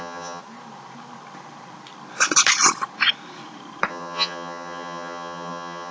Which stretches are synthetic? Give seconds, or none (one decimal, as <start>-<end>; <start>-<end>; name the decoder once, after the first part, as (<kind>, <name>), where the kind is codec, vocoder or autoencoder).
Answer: 0.0-0.4 (vocoder, HiFi-GAN); 3.9-5.9